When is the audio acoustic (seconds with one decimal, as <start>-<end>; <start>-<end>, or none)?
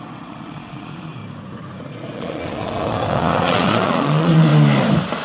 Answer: 1.2-1.9; 4.5-5.2